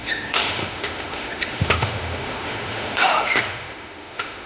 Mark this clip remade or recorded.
remade